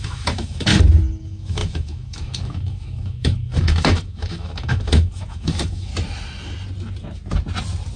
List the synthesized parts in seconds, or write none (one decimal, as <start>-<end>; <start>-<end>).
0.0-0.7; 1.2-5.9